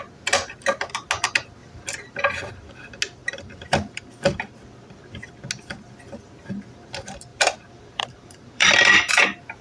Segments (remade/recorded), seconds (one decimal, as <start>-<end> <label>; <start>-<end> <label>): 0.0-1.6 recorded; 1.6-2.5 remade; 2.5-3.2 recorded; 3.2-4.5 remade; 4.5-7.3 recorded; 7.3-9.1 remade; 9.1-9.6 recorded